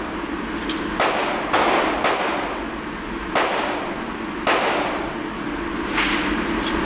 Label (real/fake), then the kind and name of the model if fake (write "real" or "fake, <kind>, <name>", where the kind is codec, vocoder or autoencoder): real